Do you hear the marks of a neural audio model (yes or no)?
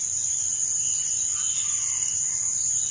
no